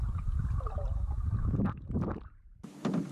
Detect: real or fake real